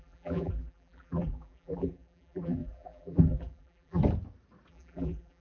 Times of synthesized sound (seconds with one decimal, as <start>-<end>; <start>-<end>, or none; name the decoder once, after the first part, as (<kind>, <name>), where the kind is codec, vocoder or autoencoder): 0.0-4.0 (vocoder, BigVGAN v2); 4.7-5.4